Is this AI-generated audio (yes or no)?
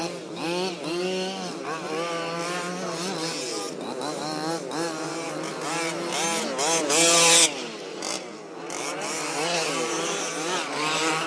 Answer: no